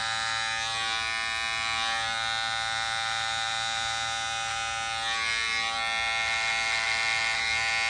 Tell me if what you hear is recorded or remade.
recorded